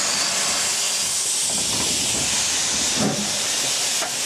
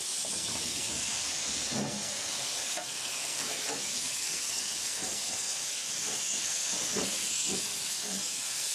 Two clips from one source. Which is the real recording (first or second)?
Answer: first